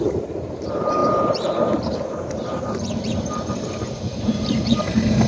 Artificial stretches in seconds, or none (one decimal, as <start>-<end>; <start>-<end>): 0.0-5.3